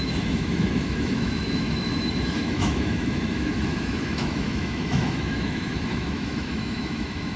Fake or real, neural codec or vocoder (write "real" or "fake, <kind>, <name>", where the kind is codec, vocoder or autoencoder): fake, autoencoder, DAC-VAE